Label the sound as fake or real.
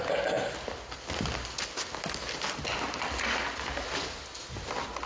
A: real